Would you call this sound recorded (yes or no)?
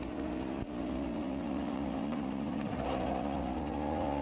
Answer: no